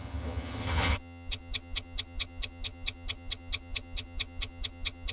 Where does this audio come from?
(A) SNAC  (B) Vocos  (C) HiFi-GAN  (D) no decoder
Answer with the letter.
C